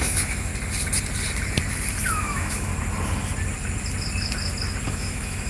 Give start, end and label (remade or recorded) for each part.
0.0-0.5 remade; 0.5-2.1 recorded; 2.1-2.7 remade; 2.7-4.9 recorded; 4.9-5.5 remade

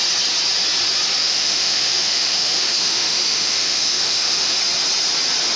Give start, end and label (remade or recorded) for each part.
0.0-1.2 recorded; 1.2-4.6 remade; 4.6-5.6 recorded

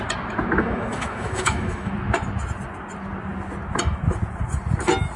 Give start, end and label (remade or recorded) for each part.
0.0-0.6 recorded; 0.6-1.9 remade; 1.9-5.2 recorded

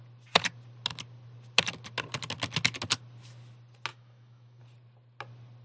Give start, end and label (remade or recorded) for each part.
0.0-3.9 recorded; 3.9-4.6 remade; 4.6-5.6 recorded